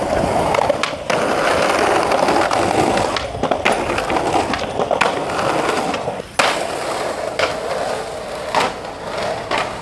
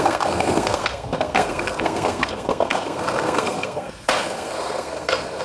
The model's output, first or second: second